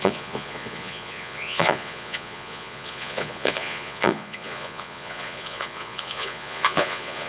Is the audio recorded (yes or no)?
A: no